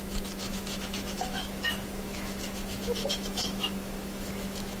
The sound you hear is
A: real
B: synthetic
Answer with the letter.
B